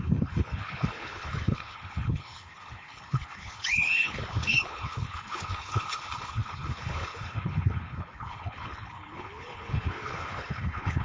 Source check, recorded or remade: remade